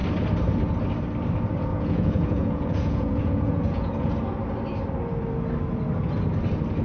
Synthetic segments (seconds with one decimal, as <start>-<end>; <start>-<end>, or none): 1.7-4.1